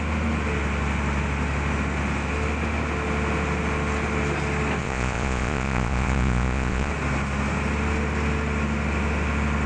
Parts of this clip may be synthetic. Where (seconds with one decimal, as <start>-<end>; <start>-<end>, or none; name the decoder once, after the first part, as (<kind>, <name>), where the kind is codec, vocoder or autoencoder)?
4.8-6.9 (vocoder, Vocos)